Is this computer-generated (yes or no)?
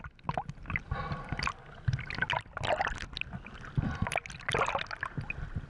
no